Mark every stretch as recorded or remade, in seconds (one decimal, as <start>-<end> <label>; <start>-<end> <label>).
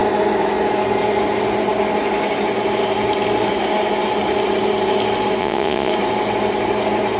0.0-5.4 recorded; 5.4-5.9 remade; 5.9-7.2 recorded